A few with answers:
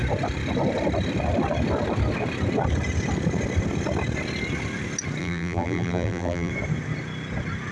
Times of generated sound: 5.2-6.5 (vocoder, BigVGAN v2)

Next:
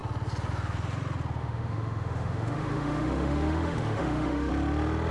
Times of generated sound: 1.4-4.5 (autoencoder, DAC-VAE)

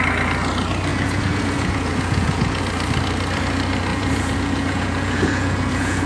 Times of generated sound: 0.9-2.6 (vocoder, Vocos); 3.9-6.1

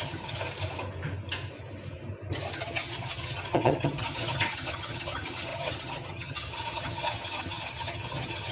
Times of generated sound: 0.0-0.4 (vocoder, HiFi-GAN); 2.6-8.5